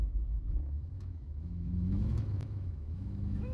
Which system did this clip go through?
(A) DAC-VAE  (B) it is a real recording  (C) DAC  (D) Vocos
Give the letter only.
A